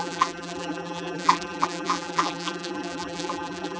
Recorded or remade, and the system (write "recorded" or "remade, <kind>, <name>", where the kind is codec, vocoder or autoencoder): remade, vocoder, BigVGAN v2